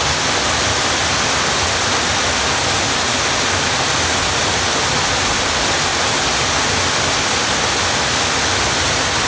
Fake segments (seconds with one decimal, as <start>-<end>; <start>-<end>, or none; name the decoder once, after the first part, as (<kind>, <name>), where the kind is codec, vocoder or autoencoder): none